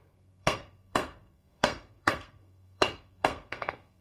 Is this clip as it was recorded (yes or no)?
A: no